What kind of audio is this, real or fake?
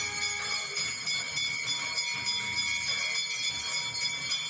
real